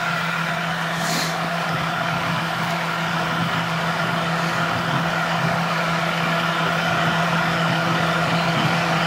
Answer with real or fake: fake